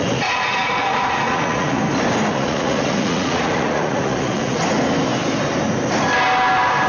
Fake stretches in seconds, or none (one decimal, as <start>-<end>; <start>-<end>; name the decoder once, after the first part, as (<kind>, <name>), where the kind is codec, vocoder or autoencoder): 0.0-1.8 (vocoder, Vocos); 2.3-4.6